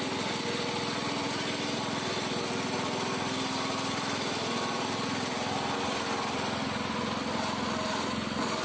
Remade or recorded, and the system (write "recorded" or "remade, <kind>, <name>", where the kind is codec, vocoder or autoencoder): recorded